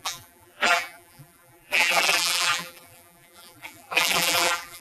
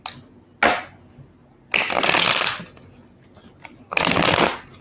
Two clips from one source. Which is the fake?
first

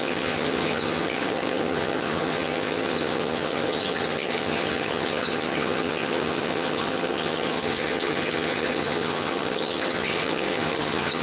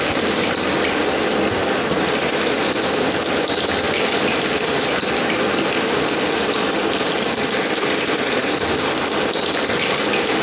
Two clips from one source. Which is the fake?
first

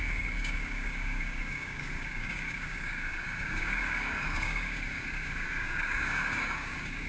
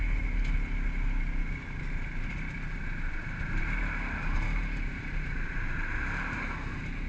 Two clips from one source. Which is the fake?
first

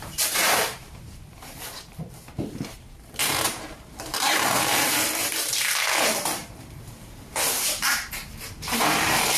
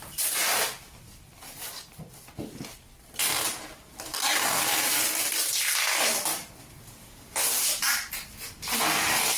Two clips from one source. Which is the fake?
first